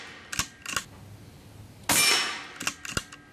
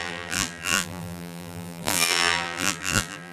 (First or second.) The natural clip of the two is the first